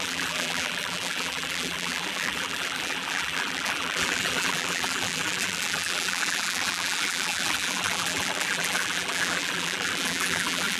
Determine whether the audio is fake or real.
fake